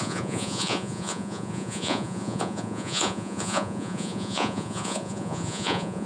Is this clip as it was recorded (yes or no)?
no